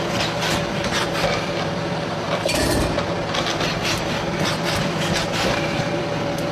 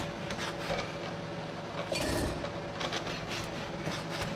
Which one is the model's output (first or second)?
first